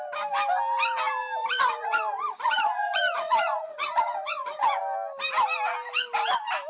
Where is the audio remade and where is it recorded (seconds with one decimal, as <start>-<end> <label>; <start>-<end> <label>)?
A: 0.0-1.4 recorded; 1.4-4.8 remade; 4.8-6.7 recorded